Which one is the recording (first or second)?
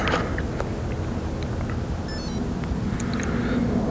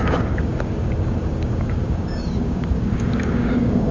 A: first